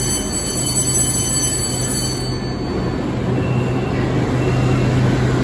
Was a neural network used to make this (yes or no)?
no